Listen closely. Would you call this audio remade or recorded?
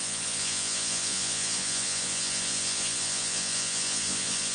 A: remade